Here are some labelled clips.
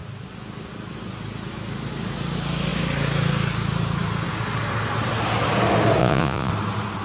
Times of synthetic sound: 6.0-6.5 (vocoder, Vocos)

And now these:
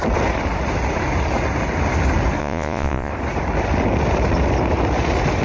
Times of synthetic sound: 2.4-3.1 (vocoder, Vocos)

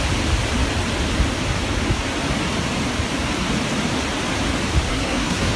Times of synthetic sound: 4.9-5.6 (codec, SNAC)

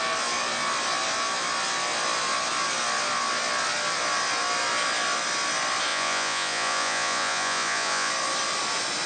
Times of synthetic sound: 5.9-8.1 (vocoder, Vocos)